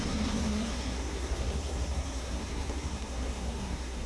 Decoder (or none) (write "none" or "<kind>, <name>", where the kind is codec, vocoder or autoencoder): codec, SNAC